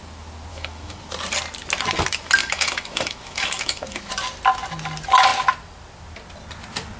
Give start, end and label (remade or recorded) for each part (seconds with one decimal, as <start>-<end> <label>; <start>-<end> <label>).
0.0-0.5 recorded; 0.5-1.0 remade; 1.0-2.4 recorded; 2.4-4.1 remade; 4.1-7.0 recorded

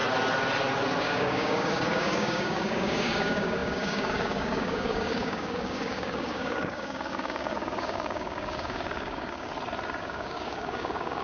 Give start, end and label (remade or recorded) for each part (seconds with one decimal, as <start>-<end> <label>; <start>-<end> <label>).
0.0-1.0 recorded; 1.0-9.5 remade; 9.5-10.0 recorded; 10.0-11.2 remade

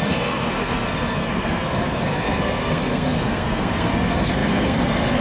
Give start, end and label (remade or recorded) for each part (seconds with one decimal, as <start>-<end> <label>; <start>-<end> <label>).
0.0-5.2 remade